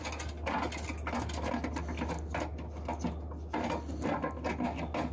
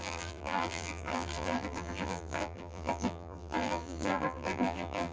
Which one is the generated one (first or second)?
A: second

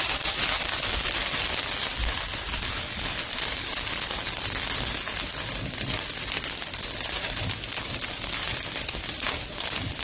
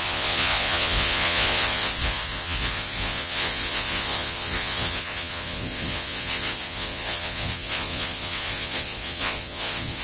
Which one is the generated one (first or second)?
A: second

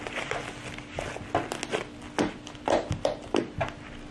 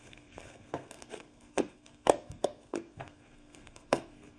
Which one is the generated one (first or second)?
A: second